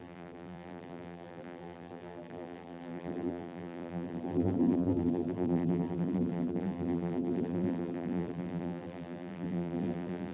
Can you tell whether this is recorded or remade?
remade